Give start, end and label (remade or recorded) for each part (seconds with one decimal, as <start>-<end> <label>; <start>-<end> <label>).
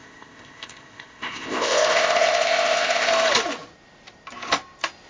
0.0-3.1 remade; 3.1-5.1 recorded